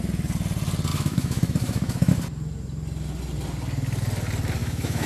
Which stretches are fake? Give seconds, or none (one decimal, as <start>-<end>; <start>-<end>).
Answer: 0.9-2.1; 4.6-5.1